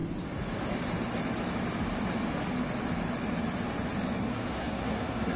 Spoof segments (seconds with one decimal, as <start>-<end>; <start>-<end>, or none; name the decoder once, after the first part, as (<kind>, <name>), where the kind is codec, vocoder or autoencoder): 4.2-5.4 (codec, SNAC)